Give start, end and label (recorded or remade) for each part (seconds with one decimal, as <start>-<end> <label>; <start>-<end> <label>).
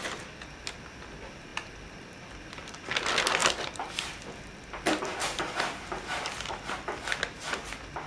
0.0-8.1 recorded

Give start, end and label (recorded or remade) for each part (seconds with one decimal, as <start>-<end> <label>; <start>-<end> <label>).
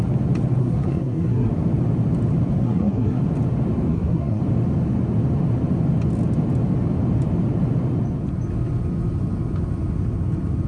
0.0-0.6 recorded; 0.6-1.5 remade; 1.5-2.6 recorded; 2.6-3.2 remade; 3.2-3.9 recorded; 3.9-4.4 remade; 4.4-10.7 recorded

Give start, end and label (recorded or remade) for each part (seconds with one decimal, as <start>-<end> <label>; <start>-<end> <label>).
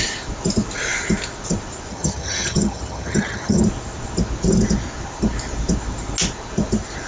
0.0-1.9 recorded; 1.9-3.6 remade; 3.6-7.1 recorded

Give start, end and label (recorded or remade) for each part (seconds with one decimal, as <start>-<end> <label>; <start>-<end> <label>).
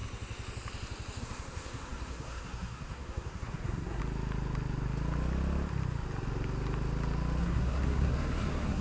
0.0-1.2 recorded; 1.2-4.0 remade; 4.0-7.4 recorded; 7.4-8.8 remade